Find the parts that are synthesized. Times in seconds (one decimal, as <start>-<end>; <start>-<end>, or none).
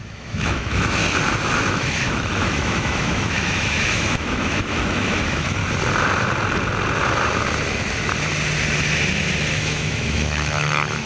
0.0-1.0; 1.7-5.6; 9.5-11.1